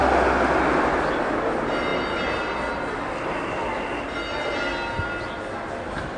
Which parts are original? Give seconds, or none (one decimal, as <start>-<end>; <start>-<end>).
0.0-6.2